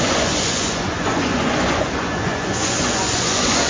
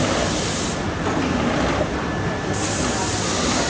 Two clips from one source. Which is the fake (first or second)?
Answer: first